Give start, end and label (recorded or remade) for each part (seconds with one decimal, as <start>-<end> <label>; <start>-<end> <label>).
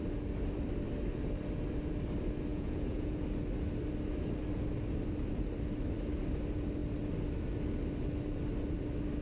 0.0-2.5 recorded; 2.5-3.2 remade; 3.2-9.2 recorded